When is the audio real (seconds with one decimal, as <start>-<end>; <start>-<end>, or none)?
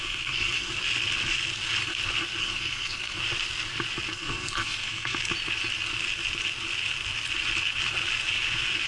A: 0.7-2.4; 3.2-4.1; 5.2-8.9